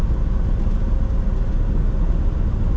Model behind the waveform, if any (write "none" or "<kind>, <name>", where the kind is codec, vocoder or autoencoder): none